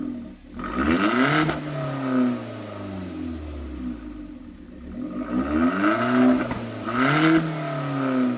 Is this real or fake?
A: real